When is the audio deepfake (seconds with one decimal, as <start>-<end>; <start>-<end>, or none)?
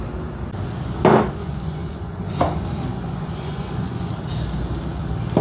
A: 1.4-2.4; 2.9-4.1